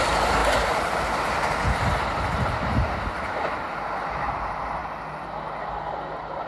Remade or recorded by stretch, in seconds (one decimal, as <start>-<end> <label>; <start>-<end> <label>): 0.0-6.5 recorded